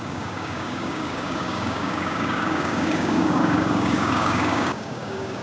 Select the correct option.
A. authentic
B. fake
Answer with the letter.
B